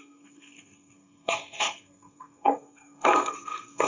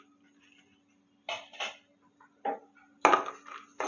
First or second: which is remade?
first